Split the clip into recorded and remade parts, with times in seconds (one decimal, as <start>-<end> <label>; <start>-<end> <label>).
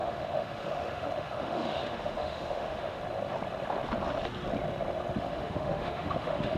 0.0-3.0 remade; 3.0-5.2 recorded; 5.2-6.6 remade